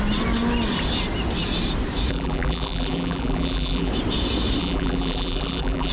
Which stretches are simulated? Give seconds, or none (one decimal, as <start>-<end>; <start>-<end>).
2.1-3.9; 4.6-5.9

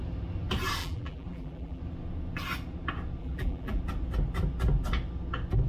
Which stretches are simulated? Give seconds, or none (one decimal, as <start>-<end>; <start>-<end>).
0.8-1.8; 3.2-3.8

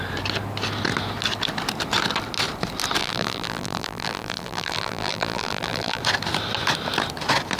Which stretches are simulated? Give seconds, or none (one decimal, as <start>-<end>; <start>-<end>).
3.0-6.0

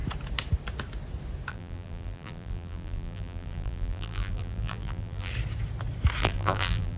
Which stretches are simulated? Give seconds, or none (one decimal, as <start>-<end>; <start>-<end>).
1.5-5.3; 6.2-7.0

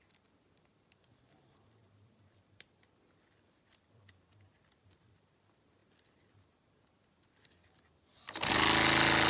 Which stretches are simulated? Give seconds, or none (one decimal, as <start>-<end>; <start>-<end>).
0.0-5.8